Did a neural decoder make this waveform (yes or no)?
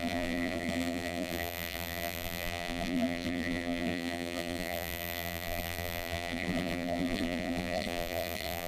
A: yes